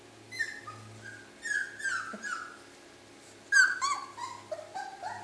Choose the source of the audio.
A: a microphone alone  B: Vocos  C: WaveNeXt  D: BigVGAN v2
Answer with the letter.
A